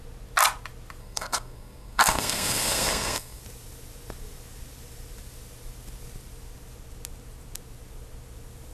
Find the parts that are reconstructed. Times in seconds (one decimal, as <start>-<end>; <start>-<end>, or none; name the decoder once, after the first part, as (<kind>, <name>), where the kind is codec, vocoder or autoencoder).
1.0-3.4 (codec, SNAC)